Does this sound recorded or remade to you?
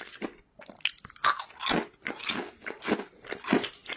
recorded